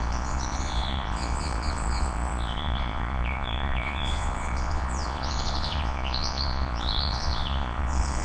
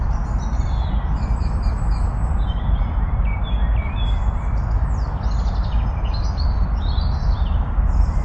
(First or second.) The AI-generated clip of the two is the first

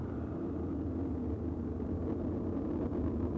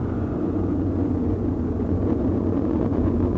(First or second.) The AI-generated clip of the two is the second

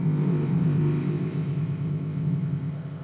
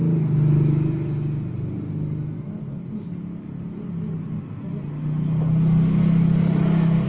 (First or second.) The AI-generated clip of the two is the first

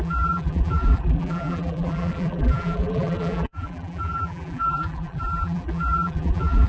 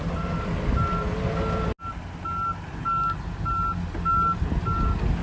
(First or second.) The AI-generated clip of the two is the first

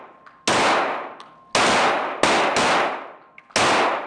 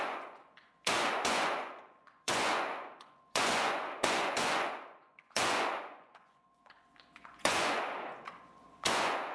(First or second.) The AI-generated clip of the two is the second